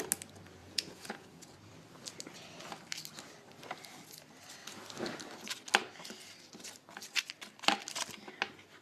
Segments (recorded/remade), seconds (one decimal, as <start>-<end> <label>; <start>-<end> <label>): 0.0-0.6 recorded; 0.6-1.5 remade; 1.5-8.8 recorded